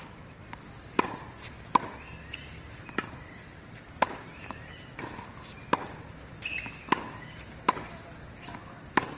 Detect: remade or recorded recorded